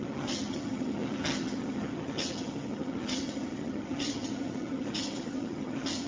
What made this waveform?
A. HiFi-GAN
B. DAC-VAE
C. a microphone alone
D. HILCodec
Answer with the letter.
A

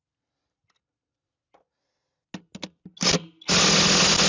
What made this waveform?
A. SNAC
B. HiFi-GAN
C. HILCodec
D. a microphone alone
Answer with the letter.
D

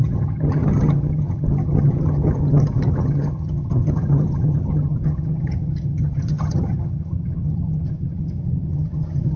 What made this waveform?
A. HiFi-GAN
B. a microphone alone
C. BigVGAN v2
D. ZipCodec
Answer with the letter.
A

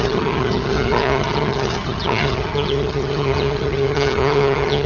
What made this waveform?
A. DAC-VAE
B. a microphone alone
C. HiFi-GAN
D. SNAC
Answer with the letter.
C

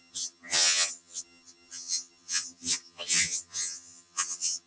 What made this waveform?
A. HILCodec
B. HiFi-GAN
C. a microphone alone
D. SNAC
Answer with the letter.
B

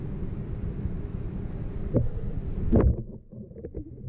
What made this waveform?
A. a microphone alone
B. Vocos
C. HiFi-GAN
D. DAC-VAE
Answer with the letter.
A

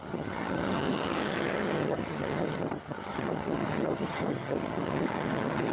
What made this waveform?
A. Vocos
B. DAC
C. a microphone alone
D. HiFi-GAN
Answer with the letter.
D